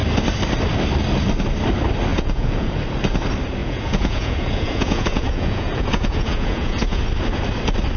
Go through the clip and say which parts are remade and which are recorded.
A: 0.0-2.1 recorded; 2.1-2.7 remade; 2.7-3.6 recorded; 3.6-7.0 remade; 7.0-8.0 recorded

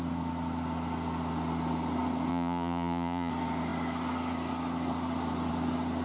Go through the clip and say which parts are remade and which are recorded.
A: 0.0-2.3 recorded; 2.3-3.3 remade; 3.3-6.0 recorded

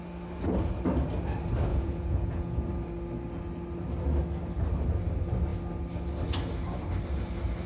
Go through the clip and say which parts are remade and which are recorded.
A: 0.0-1.7 recorded; 1.7-2.7 remade; 2.7-7.7 recorded

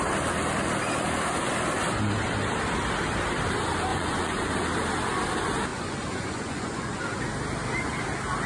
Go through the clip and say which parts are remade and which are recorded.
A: 0.0-3.9 recorded; 3.9-4.5 remade; 4.5-5.7 recorded; 5.7-7.0 remade; 7.0-8.5 recorded

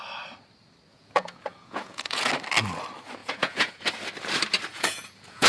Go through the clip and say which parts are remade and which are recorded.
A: 0.0-0.9 recorded; 0.9-2.3 remade; 2.3-3.2 recorded; 3.2-3.8 remade; 3.8-4.7 recorded; 4.7-5.5 remade